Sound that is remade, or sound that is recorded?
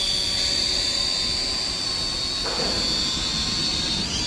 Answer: recorded